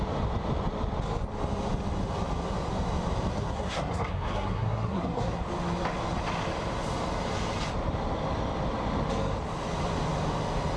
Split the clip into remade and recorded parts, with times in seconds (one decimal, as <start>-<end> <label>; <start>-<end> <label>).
0.0-3.3 recorded; 3.3-5.4 remade; 5.4-10.8 recorded